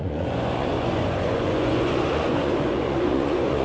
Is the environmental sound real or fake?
fake